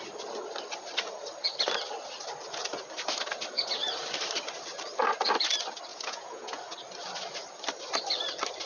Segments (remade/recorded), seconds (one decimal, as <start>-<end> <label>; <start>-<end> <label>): 0.0-5.9 recorded; 5.9-6.6 remade; 6.6-8.7 recorded